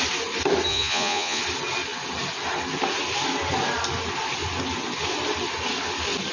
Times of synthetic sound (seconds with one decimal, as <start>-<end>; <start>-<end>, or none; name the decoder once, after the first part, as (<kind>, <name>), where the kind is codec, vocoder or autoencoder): 0.7-1.4 (vocoder, Vocos)